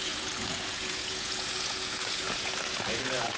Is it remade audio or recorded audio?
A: remade